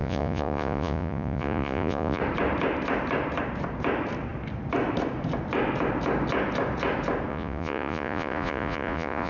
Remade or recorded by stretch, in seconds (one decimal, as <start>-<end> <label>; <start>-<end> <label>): 0.0-2.2 remade; 2.2-7.3 recorded; 7.3-9.3 remade